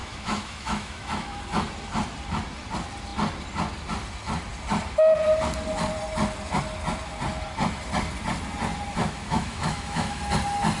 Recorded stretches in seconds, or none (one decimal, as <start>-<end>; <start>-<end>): 1.4-9.0; 10.2-10.8